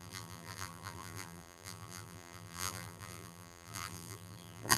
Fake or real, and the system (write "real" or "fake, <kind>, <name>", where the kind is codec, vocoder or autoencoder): fake, vocoder, BigVGAN v2